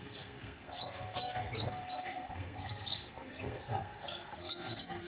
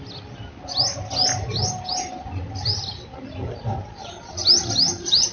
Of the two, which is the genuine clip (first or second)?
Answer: second